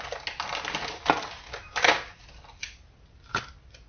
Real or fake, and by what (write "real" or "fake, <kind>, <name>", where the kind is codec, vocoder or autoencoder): real